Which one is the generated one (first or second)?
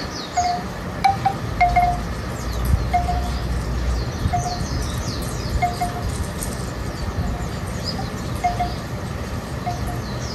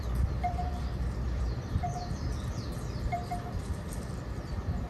second